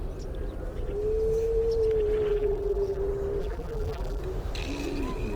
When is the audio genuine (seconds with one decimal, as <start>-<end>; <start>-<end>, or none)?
0.0-2.3; 3.0-3.4; 4.2-5.4